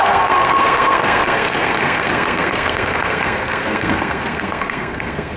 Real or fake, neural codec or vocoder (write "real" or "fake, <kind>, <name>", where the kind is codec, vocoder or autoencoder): fake, codec, SNAC